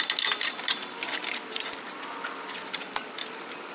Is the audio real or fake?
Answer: real